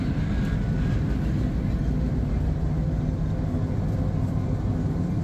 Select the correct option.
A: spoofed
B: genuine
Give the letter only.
B